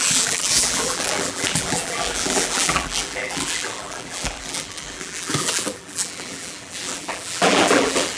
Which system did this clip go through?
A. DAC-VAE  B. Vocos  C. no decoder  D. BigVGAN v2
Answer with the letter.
D